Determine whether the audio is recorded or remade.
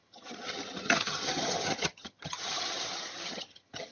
remade